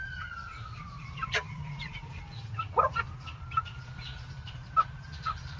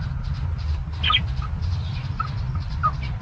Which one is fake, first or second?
first